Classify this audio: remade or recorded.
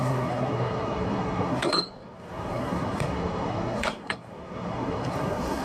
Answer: remade